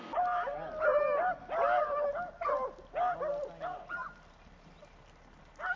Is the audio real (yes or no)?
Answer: yes